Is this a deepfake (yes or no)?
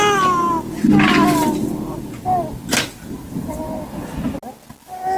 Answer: no